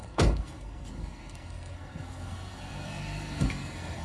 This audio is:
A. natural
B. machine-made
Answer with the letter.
B